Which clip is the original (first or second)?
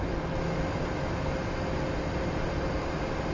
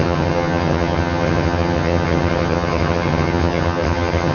first